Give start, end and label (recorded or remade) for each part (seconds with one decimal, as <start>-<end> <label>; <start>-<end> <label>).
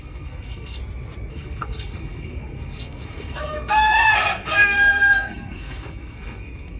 0.0-0.8 remade; 0.8-1.3 recorded; 1.3-6.8 remade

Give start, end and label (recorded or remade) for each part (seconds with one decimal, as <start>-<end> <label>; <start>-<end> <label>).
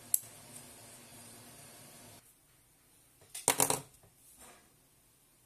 0.0-1.1 recorded; 1.1-2.0 remade; 2.0-5.5 recorded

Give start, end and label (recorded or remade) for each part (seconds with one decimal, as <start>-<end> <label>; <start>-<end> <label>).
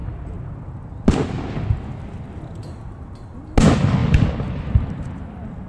0.0-4.0 recorded; 4.0-4.9 remade; 4.9-5.7 recorded